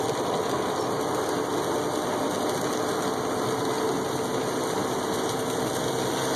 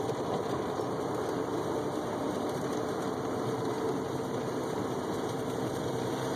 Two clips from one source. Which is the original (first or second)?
first